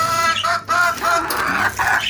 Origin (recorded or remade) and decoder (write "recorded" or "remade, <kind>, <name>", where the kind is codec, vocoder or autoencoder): recorded